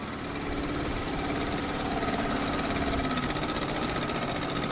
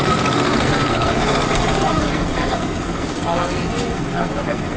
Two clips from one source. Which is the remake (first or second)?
second